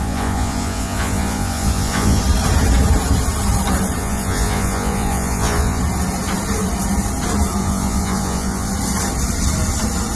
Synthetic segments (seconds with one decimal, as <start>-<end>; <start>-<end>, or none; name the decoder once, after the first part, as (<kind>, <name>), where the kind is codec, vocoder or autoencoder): 0.0-2.2 (vocoder, Vocos); 4.0-5.8; 7.6-8.7